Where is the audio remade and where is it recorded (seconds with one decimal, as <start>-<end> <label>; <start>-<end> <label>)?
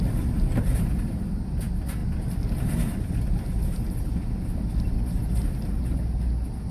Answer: 0.0-6.7 recorded